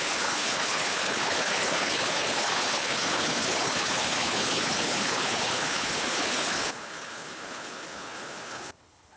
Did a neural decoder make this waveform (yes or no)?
yes